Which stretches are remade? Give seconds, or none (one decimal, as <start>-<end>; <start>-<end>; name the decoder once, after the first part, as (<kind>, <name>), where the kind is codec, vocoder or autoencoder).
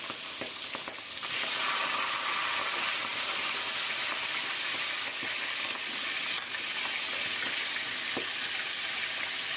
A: none